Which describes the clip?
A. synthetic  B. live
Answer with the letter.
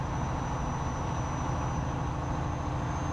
B